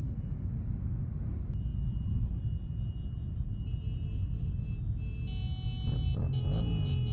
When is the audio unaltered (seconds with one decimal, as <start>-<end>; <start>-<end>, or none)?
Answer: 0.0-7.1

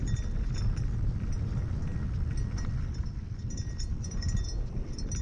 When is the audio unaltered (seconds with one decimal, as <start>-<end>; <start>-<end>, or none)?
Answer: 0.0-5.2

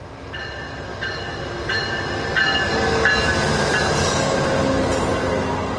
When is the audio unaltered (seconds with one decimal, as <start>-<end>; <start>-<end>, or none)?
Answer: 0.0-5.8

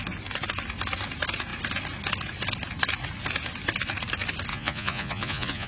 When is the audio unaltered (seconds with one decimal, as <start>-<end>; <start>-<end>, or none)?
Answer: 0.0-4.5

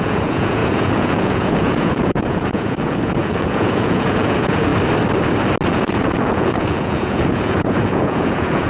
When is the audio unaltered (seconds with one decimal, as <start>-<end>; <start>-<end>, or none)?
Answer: 4.7-5.7